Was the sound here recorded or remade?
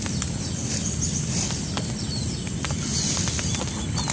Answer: recorded